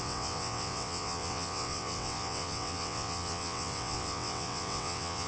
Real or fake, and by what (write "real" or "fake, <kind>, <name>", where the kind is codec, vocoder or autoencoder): fake, vocoder, WaveNeXt